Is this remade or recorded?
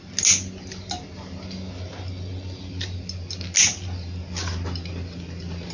recorded